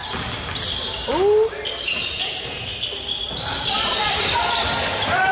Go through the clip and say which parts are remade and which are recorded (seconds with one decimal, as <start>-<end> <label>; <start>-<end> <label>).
0.0-5.3 recorded